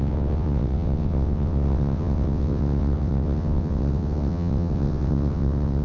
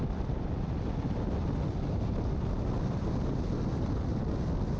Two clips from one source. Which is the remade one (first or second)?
first